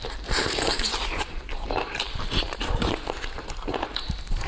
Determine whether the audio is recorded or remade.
remade